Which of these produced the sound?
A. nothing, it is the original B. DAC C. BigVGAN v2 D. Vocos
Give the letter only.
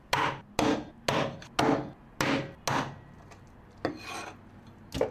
A